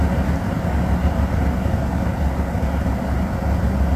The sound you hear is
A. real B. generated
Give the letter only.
A